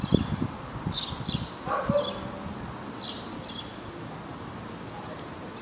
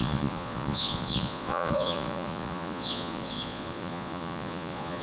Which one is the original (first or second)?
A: first